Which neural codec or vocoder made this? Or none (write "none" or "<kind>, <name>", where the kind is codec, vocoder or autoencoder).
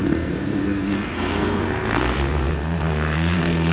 codec, SNAC